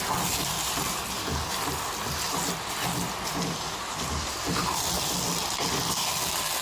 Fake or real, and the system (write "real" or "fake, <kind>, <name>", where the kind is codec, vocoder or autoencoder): real